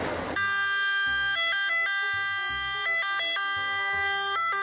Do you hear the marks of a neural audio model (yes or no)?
no